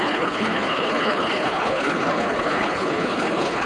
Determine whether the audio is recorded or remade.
remade